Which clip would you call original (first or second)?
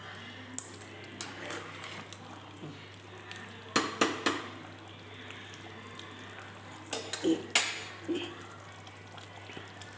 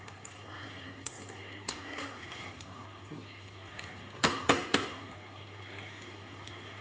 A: first